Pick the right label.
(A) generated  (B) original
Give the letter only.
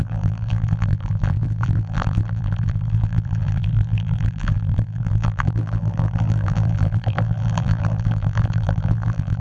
A